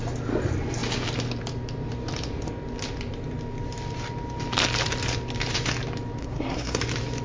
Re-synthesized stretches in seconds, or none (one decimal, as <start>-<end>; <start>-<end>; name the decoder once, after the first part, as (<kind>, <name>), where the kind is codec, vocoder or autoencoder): 6.2-6.8 (codec, SNAC)